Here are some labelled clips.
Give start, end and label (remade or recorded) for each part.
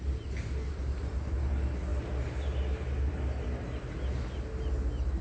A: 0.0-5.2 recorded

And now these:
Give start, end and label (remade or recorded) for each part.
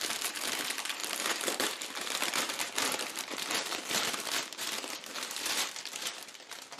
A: 0.0-6.8 remade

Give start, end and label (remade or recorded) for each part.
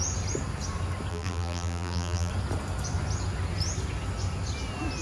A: 0.0-1.1 recorded; 1.1-2.3 remade; 2.3-5.0 recorded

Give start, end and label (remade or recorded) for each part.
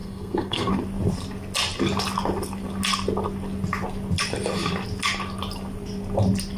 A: 0.0-0.7 remade; 0.7-6.6 recorded